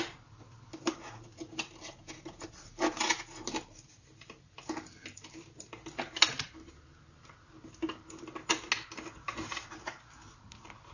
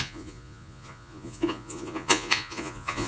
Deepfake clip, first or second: second